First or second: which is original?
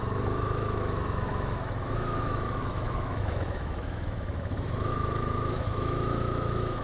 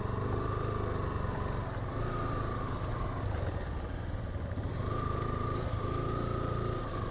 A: second